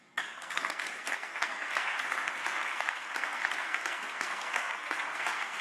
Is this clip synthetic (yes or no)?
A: yes